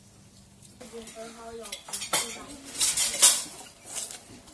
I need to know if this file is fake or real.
real